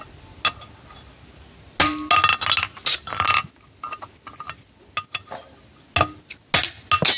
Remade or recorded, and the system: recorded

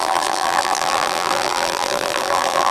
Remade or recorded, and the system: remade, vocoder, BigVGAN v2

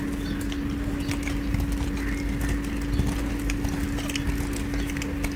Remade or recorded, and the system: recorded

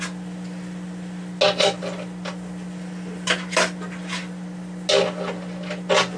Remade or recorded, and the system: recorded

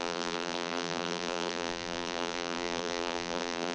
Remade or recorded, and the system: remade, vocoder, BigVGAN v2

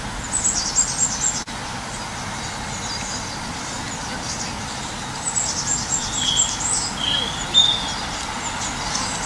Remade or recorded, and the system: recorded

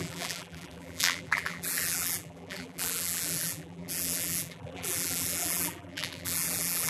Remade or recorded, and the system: remade, vocoder, BigVGAN v2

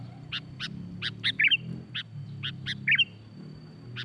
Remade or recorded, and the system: recorded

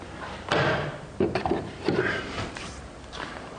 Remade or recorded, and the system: remade, vocoder, BigVGAN v2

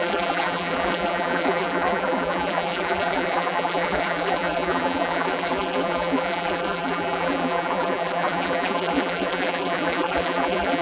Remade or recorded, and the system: remade, vocoder, BigVGAN v2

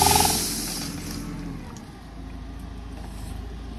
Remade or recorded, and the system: recorded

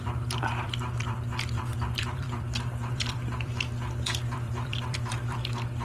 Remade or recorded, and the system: remade, vocoder, BigVGAN v2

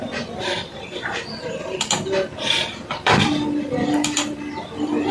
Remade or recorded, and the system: remade, vocoder, BigVGAN v2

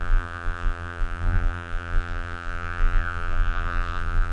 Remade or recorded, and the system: remade, vocoder, BigVGAN v2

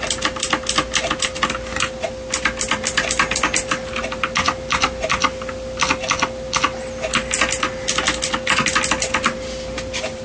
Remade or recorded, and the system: recorded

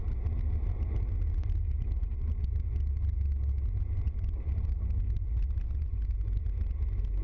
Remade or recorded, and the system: recorded